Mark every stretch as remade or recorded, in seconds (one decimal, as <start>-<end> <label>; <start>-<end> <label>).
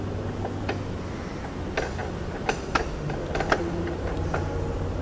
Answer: 0.0-5.0 recorded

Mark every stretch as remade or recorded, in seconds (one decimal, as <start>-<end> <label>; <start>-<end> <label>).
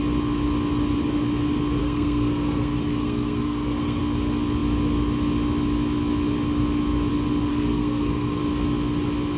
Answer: 0.0-1.8 recorded; 1.8-4.0 remade; 4.0-7.5 recorded; 7.5-8.4 remade; 8.4-9.4 recorded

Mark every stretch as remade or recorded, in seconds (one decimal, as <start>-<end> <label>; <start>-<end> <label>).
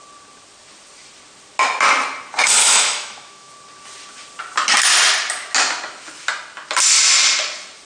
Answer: 0.0-2.6 recorded; 2.6-3.5 remade; 3.5-7.8 recorded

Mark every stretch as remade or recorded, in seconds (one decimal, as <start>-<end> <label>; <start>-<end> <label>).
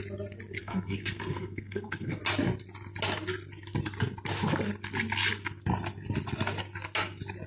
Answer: 0.0-0.6 recorded; 0.6-2.2 remade; 2.2-7.5 recorded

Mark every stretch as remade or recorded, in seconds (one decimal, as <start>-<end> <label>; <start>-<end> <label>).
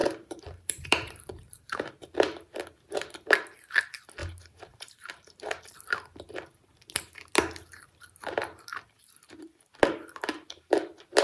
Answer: 0.0-1.9 remade; 1.9-4.2 recorded; 4.2-5.6 remade; 5.6-11.2 recorded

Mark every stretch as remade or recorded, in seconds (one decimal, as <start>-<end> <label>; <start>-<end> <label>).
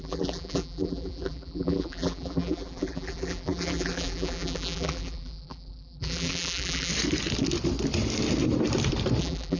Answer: 0.0-6.9 remade; 6.9-9.2 recorded; 9.2-9.6 remade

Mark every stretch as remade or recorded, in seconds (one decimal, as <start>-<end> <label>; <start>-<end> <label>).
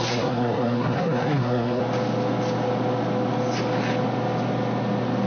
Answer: 0.0-1.8 remade; 1.8-5.3 recorded